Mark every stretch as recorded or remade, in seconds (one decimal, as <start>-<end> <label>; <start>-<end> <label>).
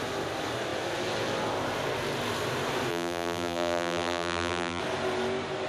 0.0-2.9 recorded; 2.9-4.8 remade; 4.8-5.7 recorded